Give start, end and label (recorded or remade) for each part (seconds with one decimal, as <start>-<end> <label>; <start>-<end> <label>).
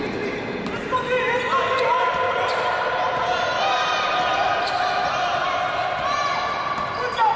0.0-7.4 recorded